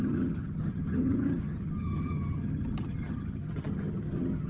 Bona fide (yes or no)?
no